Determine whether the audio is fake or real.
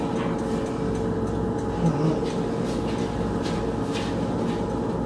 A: real